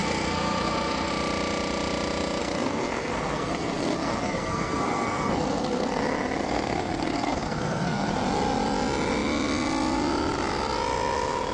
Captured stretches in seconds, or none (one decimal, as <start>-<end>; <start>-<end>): 1.1-2.4; 6.0-6.4; 8.1-11.5